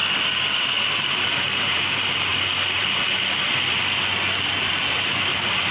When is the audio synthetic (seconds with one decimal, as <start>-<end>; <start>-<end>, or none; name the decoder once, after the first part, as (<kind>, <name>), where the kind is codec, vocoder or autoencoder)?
0.6-2.3 (vocoder, BigVGAN v2); 4.7-5.7